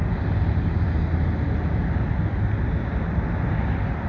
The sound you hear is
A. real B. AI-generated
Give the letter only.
A